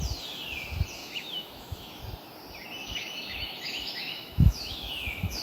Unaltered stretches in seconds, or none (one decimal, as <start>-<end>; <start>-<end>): 0.0-1.0; 2.0-2.8